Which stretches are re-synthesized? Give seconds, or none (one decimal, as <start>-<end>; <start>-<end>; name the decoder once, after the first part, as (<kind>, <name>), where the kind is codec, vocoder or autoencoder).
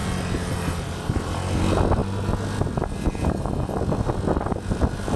none